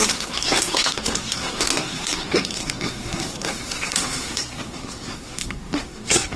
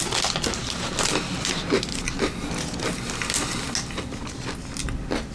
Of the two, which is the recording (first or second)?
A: second